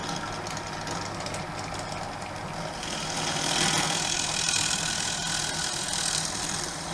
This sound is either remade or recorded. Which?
recorded